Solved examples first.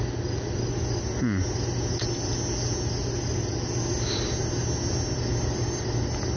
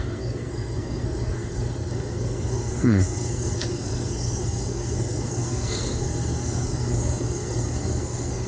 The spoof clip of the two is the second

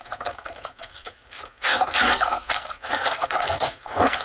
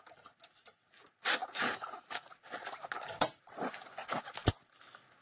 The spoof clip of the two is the first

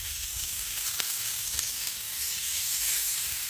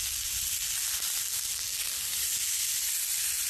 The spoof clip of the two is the first